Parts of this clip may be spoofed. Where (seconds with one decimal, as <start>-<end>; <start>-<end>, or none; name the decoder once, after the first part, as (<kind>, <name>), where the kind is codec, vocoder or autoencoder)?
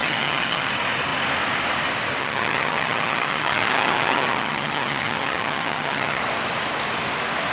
0.0-0.7 (vocoder, HiFi-GAN); 2.2-6.2